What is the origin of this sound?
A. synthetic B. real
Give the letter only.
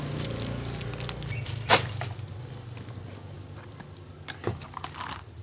B